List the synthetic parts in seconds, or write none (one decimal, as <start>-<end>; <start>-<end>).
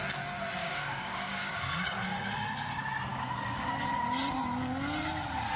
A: 0.6-1.5; 3.1-3.7